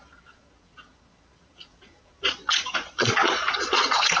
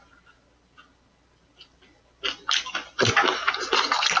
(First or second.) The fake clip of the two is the first